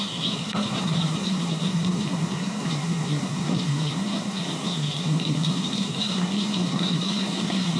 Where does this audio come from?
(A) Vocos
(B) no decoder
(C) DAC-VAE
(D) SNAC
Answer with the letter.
D